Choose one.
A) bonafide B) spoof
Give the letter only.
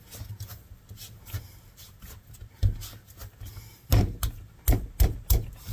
A